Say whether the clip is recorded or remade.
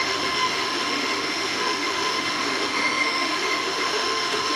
remade